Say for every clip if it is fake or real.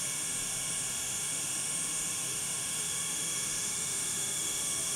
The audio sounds fake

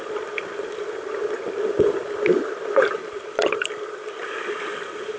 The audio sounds real